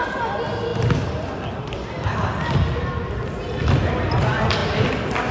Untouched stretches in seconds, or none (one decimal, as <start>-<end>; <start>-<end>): 0.0-5.3